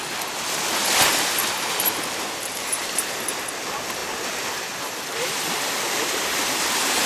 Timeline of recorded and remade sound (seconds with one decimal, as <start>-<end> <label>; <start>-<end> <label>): 0.0-1.4 recorded; 1.4-3.1 remade; 3.1-4.0 recorded; 4.0-7.1 remade